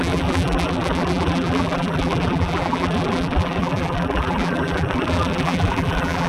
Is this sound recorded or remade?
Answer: remade